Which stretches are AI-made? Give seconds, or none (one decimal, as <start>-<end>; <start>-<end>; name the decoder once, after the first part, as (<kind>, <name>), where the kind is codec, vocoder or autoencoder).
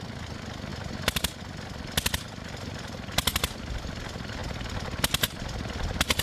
none